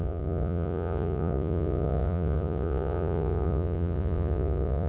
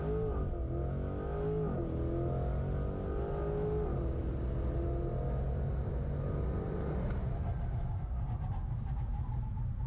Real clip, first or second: second